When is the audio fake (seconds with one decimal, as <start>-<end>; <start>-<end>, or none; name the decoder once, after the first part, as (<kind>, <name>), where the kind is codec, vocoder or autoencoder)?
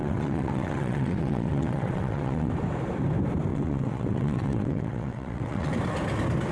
0.0-2.5 (vocoder, WaveNeXt); 3.5-5.7